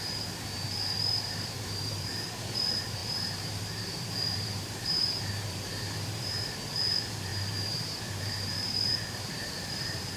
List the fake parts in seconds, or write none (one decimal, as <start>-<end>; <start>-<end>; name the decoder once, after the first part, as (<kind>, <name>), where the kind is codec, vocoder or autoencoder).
0.0-10.2 (vocoder, BigVGAN v2)

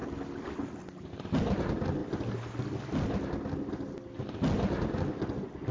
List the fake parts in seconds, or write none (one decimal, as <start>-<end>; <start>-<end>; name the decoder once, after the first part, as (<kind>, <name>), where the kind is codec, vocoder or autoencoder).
none

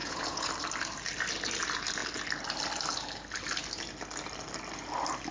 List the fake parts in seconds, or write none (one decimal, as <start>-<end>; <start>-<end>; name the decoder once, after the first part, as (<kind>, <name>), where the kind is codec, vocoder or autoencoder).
0.0-0.5 (vocoder, Vocos)

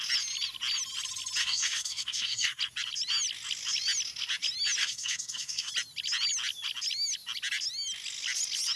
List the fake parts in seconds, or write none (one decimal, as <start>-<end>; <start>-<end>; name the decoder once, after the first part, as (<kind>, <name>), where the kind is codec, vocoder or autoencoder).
1.4-2.6 (codec, SNAC); 4.8-5.7